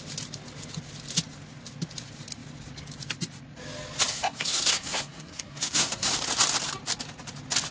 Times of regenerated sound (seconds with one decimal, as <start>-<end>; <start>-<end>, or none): 4.1-6.1

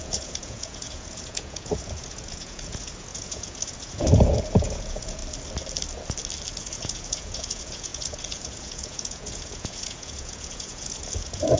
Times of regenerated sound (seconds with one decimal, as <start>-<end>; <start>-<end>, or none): 0.0-5.2; 6.5-11.6

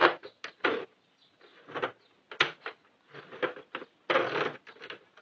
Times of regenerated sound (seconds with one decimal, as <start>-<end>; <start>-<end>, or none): none

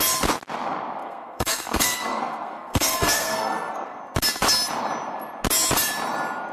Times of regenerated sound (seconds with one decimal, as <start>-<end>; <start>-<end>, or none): 1.0-4.0

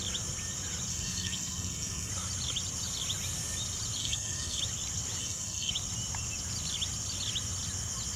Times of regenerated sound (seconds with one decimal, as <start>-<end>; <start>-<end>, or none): 0.9-2.1; 4.0-4.6; 5.2-5.7

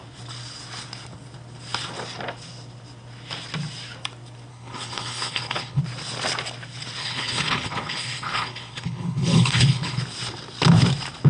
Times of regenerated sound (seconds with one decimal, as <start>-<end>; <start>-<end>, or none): 4.5-5.8; 7.0-10.0

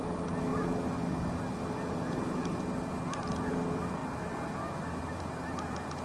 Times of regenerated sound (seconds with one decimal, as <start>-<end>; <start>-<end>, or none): none